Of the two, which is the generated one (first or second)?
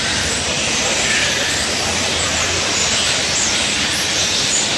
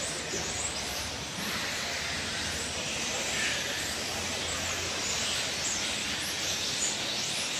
first